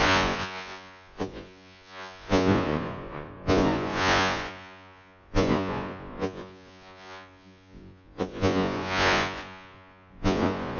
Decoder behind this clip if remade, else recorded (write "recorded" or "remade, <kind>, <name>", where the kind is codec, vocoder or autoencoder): remade, vocoder, Vocos